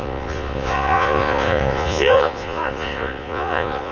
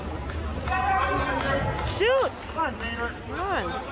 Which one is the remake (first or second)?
first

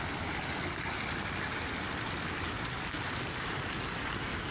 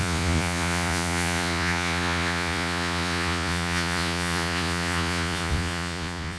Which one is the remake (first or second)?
second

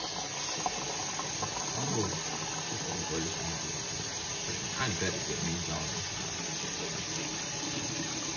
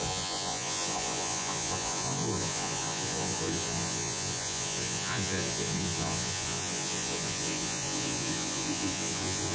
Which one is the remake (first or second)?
second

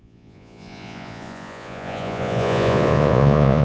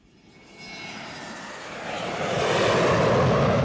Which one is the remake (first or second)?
first